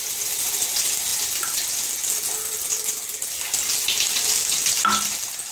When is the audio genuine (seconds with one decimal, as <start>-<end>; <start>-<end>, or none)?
0.0-5.5